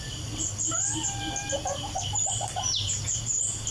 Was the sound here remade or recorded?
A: recorded